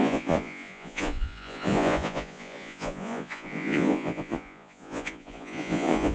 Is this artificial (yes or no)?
yes